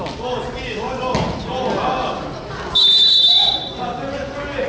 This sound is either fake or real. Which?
real